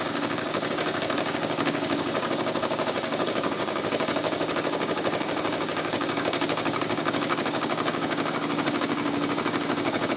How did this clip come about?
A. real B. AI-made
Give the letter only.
B